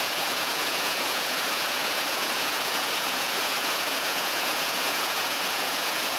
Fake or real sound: fake